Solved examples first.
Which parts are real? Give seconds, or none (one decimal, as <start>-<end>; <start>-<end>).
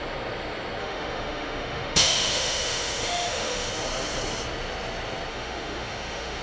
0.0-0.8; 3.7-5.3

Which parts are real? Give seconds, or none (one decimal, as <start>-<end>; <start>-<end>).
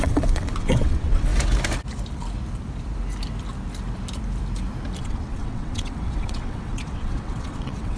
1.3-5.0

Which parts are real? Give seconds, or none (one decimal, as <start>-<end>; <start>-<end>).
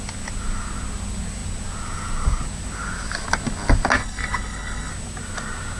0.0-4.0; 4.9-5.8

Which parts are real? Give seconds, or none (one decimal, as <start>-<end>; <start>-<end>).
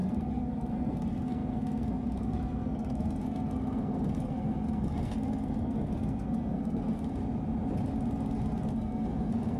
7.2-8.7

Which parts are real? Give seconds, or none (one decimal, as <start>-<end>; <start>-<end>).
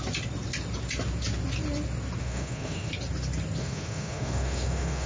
0.0-2.2; 2.9-3.6